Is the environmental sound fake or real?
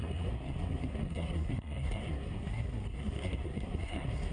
fake